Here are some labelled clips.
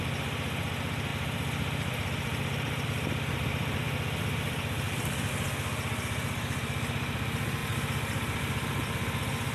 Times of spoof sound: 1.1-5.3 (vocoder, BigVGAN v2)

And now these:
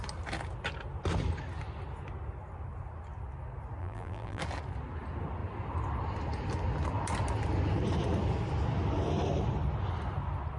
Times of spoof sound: 3.8-4.4 (vocoder, BigVGAN v2)